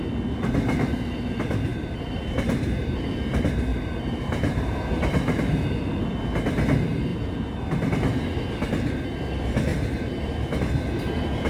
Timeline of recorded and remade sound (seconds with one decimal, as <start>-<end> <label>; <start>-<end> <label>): 0.0-1.7 recorded; 1.7-3.1 remade; 3.1-3.7 recorded; 3.7-5.4 remade; 5.4-9.7 recorded; 9.7-10.6 remade; 10.6-11.5 recorded